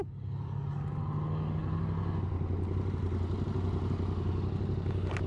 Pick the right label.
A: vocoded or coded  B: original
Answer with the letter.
B